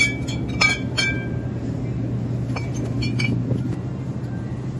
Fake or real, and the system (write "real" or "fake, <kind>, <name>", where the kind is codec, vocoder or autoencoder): real